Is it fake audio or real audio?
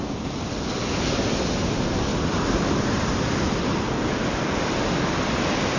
real